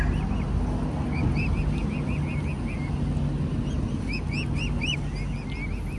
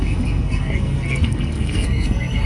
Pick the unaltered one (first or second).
first